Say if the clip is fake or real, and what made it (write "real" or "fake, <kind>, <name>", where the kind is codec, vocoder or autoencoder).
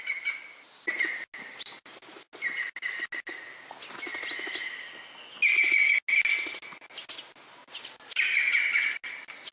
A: real